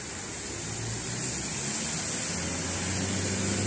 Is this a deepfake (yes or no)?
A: no